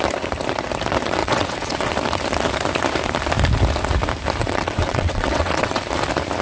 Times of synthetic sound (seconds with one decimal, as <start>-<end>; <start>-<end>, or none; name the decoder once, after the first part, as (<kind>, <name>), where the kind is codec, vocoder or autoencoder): 1.2-1.9 (vocoder, WaveNeXt); 4.4-5.8